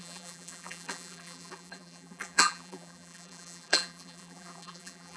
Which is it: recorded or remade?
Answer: remade